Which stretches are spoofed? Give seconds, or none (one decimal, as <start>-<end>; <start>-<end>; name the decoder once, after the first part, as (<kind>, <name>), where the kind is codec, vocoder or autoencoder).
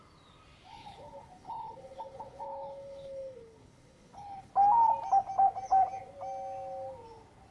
0.7-4.5 (codec, HILCodec)